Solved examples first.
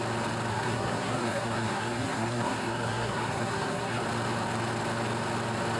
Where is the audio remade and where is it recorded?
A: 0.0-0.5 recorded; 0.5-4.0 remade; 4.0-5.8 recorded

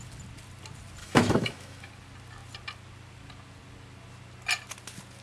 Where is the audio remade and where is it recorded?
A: 0.0-1.0 recorded; 1.0-1.9 remade; 1.9-5.2 recorded

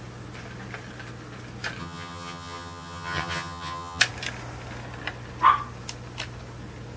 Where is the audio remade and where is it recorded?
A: 0.0-1.8 recorded; 1.8-4.0 remade; 4.0-7.0 recorded

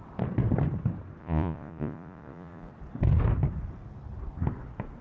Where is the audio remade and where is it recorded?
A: 0.0-1.2 recorded; 1.2-2.7 remade; 2.7-5.0 recorded

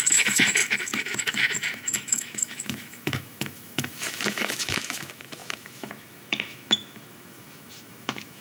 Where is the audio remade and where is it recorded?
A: 0.0-8.4 remade

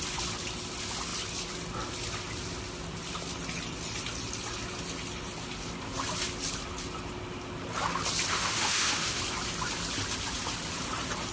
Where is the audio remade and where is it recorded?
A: 0.0-8.3 recorded; 8.3-9.2 remade; 9.2-11.3 recorded

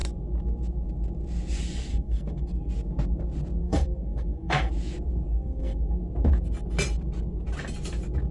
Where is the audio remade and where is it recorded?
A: 0.0-1.9 recorded; 1.9-2.7 remade; 2.7-3.6 recorded; 3.6-4.7 remade; 4.7-5.3 recorded; 5.3-6.0 remade; 6.0-8.3 recorded

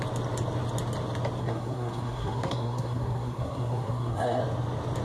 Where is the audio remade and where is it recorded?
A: 0.0-1.4 recorded; 1.4-4.4 remade; 4.4-5.0 recorded